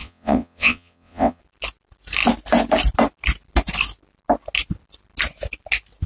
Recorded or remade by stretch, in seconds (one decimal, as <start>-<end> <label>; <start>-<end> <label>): 0.0-1.4 remade; 1.4-6.1 recorded